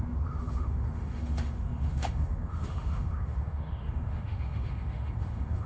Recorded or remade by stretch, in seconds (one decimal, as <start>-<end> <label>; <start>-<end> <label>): 0.0-5.7 remade